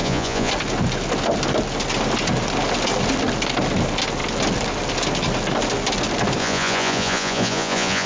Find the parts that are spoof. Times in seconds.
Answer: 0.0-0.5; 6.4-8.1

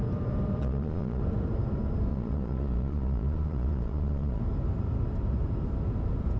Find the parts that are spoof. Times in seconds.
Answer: 0.6-1.2; 2.1-4.4

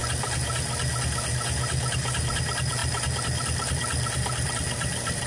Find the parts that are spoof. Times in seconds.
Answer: none

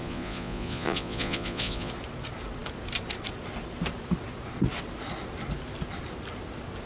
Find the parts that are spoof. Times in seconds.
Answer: 0.0-1.9

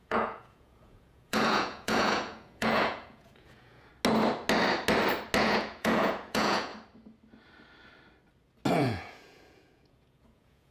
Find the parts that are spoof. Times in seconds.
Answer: 0.0-3.9; 5.4-6.7; 8.7-10.7

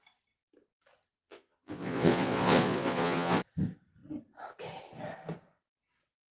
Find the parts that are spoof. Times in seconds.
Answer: 1.2-3.4

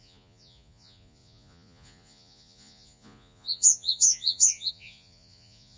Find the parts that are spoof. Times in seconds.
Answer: 0.0-5.8

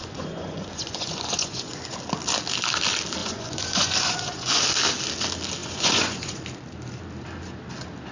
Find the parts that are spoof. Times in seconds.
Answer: 0.0-2.0; 3.2-4.6; 5.6-6.4